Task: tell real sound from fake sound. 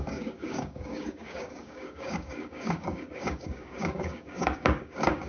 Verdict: fake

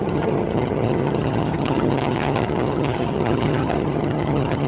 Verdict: fake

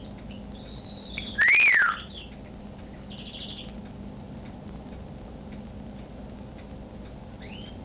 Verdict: real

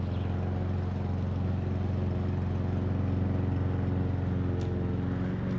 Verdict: real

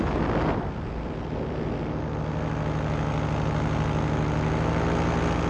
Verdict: real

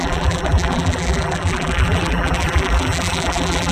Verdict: fake